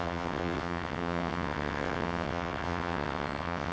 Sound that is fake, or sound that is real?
fake